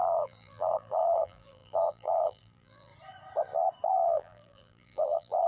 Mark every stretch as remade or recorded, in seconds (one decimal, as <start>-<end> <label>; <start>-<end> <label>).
0.0-2.9 remade; 2.9-3.9 recorded; 3.9-5.5 remade